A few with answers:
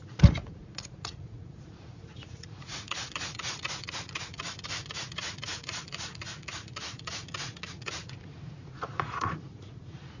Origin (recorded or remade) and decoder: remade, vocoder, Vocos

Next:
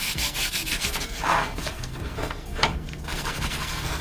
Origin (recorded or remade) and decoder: remade, codec, SNAC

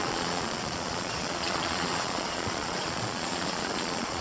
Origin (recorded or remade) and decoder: remade, vocoder, Vocos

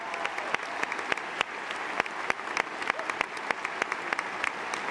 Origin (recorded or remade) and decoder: recorded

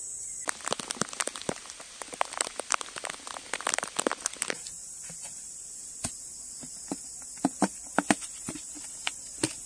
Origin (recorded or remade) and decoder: recorded